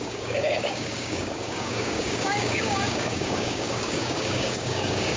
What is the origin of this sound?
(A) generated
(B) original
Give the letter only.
A